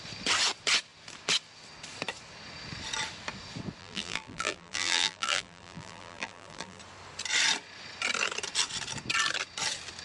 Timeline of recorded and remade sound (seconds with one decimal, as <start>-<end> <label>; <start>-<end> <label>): 0.0-3.8 recorded; 3.8-6.8 remade; 6.8-10.0 recorded